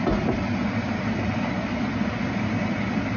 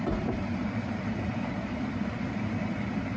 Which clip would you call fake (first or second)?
second